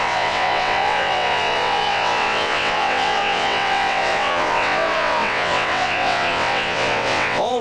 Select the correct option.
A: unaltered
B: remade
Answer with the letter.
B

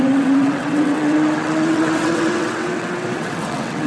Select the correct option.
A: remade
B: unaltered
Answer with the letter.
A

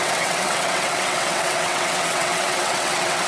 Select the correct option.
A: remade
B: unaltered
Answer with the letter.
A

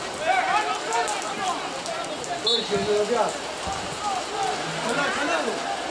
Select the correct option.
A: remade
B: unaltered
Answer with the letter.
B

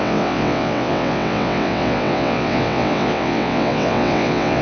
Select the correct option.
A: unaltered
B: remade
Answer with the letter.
B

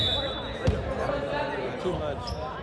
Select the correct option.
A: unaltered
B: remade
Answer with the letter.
A